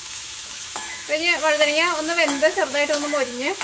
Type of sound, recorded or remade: remade